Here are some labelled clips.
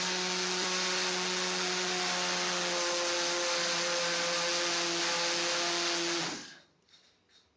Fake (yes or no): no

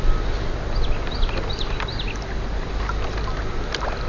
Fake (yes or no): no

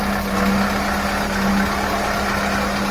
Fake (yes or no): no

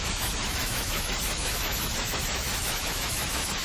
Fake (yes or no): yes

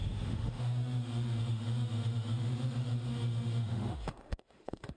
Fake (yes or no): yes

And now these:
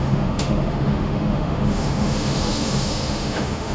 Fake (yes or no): yes